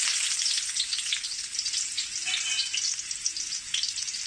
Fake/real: real